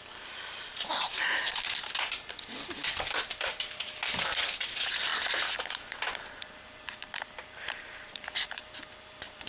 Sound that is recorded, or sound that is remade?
remade